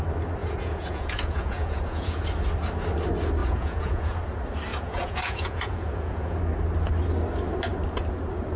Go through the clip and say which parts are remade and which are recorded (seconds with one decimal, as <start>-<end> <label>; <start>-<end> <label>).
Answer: 0.0-0.4 recorded; 0.4-2.2 remade; 2.2-3.4 recorded; 3.4-4.2 remade; 4.2-4.7 recorded; 4.7-6.4 remade; 6.4-8.6 recorded